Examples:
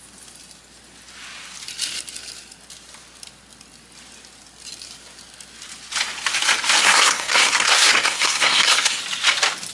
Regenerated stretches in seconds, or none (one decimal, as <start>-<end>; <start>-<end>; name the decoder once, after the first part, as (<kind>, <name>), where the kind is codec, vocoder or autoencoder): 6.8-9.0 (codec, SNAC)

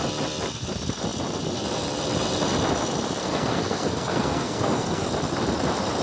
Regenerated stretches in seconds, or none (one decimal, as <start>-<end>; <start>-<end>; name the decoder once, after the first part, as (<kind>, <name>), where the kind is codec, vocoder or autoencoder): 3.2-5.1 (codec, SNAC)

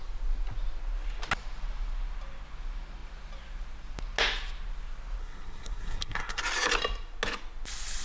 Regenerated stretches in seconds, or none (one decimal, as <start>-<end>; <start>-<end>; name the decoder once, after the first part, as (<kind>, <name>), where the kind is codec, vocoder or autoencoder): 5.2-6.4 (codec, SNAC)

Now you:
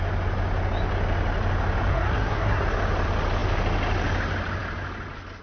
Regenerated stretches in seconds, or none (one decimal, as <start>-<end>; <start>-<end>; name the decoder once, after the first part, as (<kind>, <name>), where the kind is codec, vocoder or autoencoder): 1.9-2.6 (codec, SNAC)

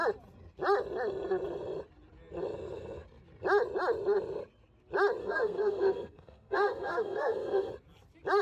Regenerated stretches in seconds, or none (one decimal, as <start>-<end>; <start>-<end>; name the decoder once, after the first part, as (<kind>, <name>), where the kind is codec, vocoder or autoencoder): 5.2-7.7 (codec, SNAC)

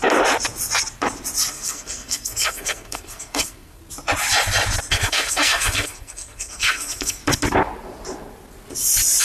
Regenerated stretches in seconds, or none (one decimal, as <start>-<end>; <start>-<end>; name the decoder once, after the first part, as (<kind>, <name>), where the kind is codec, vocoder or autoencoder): 1.5-3.8 (codec, SNAC); 4.9-7.2

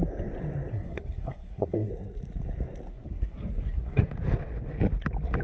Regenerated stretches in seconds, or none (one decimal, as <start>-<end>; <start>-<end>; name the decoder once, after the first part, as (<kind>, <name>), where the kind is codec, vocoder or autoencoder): 0.7-1.9 (codec, SNAC); 2.9-4.1